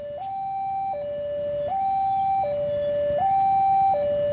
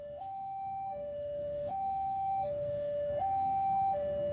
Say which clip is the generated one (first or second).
second